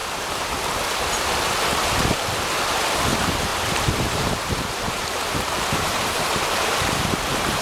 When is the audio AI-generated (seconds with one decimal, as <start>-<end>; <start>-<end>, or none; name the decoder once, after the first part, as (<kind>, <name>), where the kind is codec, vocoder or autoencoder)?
2.7-7.6 (vocoder, BigVGAN v2)